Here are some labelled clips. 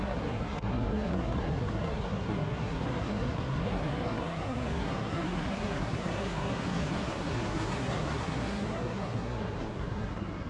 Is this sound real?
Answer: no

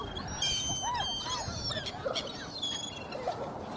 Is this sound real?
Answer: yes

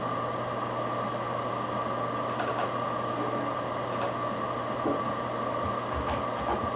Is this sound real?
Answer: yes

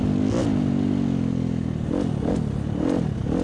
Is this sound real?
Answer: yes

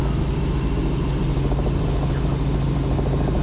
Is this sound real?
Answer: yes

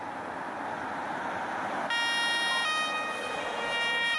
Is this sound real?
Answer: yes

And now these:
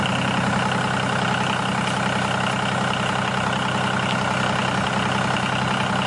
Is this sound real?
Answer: yes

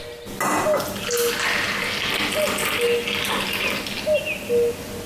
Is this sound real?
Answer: yes